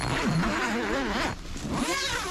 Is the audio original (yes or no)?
yes